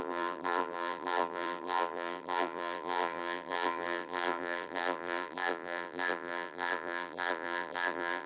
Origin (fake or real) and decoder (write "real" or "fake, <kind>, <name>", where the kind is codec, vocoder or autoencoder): fake, vocoder, BigVGAN v2